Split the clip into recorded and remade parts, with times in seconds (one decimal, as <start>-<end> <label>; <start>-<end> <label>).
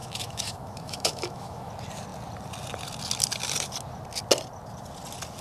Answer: 0.0-1.7 remade; 1.7-5.4 recorded